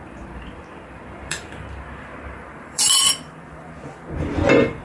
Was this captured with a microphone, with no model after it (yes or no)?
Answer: no